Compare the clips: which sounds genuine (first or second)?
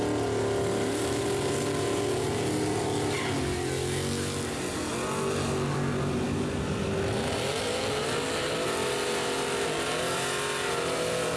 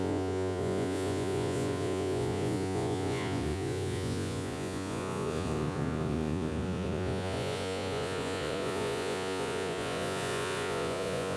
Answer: first